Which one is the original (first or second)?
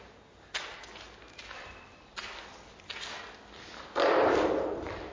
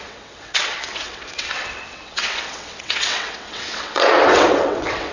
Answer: first